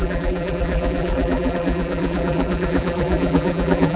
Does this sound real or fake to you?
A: fake